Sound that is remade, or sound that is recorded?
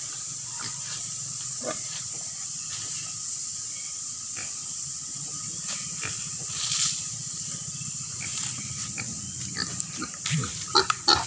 remade